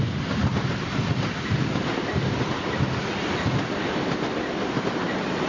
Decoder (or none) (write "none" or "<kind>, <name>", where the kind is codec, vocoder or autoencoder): none